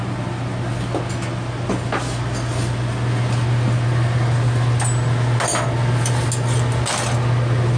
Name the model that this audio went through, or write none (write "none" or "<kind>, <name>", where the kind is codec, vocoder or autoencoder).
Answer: none